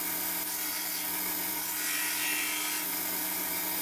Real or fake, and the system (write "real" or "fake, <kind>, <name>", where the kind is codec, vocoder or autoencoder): real